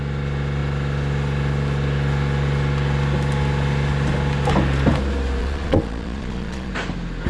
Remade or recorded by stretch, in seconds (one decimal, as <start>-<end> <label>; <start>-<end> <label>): 0.0-5.4 recorded; 5.4-6.7 remade; 6.7-7.3 recorded